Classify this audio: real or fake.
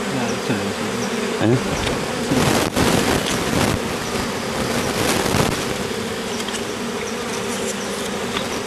real